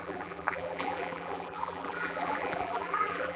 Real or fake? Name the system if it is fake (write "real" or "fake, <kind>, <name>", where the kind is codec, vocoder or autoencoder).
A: fake, vocoder, BigVGAN v2